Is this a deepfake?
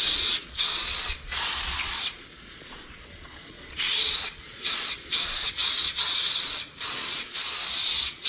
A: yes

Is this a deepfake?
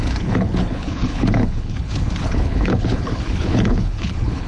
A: yes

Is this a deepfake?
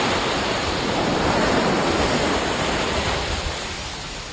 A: no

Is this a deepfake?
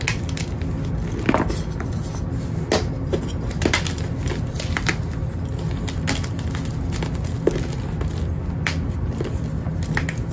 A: no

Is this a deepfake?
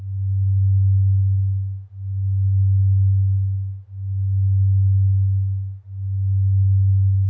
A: no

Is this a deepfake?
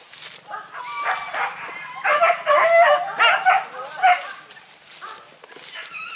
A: no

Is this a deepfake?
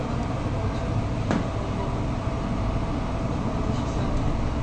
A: no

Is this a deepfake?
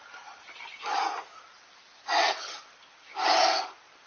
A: no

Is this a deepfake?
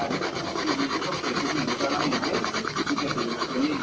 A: no